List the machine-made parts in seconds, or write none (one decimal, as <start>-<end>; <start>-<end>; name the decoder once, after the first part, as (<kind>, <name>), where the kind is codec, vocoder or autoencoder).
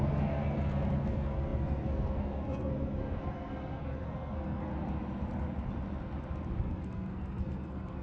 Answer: 0.0-4.7 (codec, SNAC); 6.6-8.0